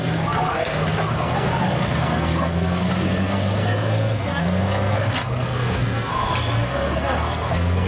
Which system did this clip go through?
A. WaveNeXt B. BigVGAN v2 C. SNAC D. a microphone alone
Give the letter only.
C